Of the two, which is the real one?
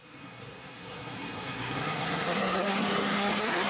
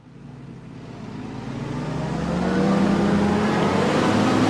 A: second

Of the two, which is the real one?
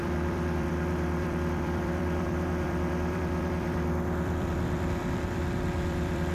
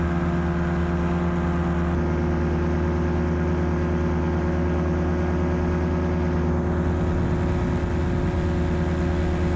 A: second